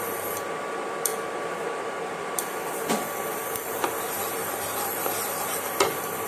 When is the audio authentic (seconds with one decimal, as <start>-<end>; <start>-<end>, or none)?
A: 1.1-2.1